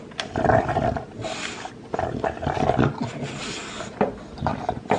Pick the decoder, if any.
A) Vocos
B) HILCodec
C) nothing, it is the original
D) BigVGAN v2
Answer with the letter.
C